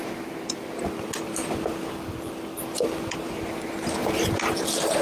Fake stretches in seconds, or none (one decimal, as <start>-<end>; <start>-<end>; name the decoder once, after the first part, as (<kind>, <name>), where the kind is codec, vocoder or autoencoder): none